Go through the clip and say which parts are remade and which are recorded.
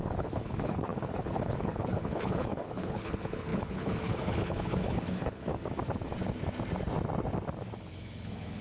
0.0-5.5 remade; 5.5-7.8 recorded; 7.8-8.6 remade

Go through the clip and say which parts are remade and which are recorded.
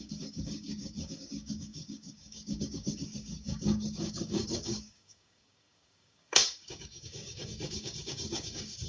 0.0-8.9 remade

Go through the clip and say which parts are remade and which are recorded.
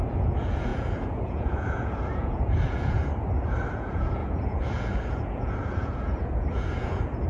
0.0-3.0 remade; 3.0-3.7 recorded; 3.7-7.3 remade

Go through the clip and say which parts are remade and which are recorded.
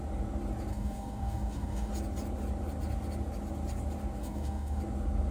0.0-0.7 recorded; 0.7-1.9 remade; 1.9-4.2 recorded; 4.2-4.8 remade; 4.8-5.3 recorded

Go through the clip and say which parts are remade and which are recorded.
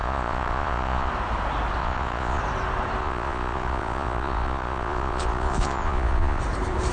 0.0-1.1 remade; 1.1-1.8 recorded; 1.8-2.4 remade; 2.4-3.0 recorded; 3.0-6.4 remade; 6.4-6.9 recorded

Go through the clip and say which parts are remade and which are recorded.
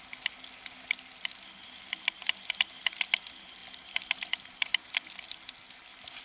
0.0-6.2 recorded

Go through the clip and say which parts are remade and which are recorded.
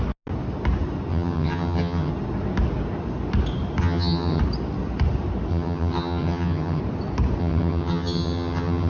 0.0-1.1 recorded; 1.1-2.1 remade; 2.1-3.8 recorded; 3.8-4.4 remade; 4.4-5.5 recorded; 5.5-6.8 remade; 6.8-7.4 recorded; 7.4-8.9 remade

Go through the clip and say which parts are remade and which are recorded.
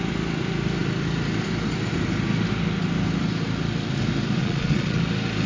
0.0-4.4 recorded; 4.4-5.0 remade; 5.0-5.5 recorded